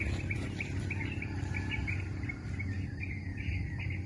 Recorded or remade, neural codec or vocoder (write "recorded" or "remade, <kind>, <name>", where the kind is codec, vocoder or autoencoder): recorded